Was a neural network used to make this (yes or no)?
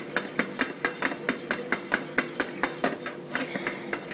no